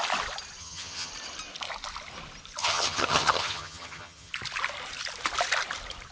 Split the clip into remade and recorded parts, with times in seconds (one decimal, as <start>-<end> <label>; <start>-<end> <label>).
0.0-0.6 recorded; 0.6-1.1 remade; 1.1-2.6 recorded; 2.6-4.3 remade; 4.3-6.1 recorded